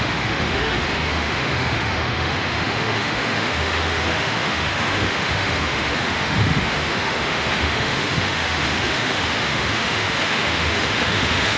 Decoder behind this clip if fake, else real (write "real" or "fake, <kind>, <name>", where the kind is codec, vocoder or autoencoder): fake, autoencoder, DAC-VAE